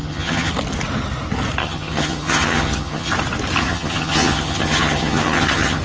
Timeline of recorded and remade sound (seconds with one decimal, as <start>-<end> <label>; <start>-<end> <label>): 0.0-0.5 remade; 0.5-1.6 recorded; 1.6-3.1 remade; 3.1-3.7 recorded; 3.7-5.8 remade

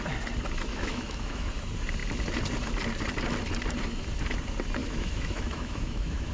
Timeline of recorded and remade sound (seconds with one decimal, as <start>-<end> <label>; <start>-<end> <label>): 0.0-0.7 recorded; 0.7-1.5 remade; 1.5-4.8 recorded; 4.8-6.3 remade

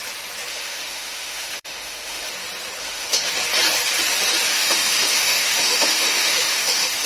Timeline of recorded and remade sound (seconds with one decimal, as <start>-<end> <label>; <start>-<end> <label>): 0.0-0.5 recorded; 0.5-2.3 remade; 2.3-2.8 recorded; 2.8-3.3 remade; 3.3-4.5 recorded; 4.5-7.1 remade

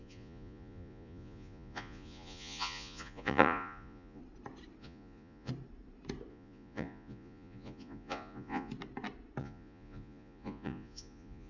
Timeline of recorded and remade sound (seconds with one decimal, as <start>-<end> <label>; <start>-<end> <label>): 0.0-4.2 remade; 4.2-4.8 recorded; 4.8-5.5 remade; 5.5-6.3 recorded; 6.3-8.7 remade; 8.7-9.4 recorded; 9.4-11.5 remade

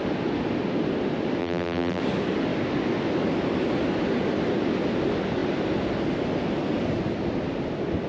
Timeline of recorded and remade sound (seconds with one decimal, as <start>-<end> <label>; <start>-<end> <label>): 0.0-1.4 recorded; 1.4-2.0 remade; 2.0-8.1 recorded

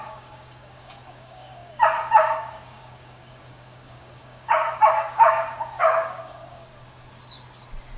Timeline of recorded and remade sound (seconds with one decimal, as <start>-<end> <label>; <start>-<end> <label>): 0.0-6.7 remade; 6.7-8.0 recorded